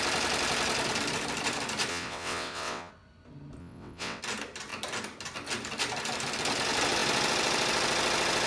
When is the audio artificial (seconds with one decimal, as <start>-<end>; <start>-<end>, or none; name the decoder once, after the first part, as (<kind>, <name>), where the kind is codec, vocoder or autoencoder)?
1.9-2.9 (vocoder, WaveNeXt); 3.6-4.2